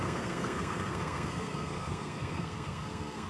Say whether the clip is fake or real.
fake